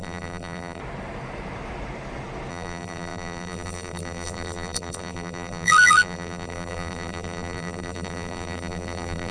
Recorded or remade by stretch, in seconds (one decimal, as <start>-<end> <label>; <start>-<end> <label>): 0.0-0.8 remade; 0.8-2.5 recorded; 2.5-9.3 remade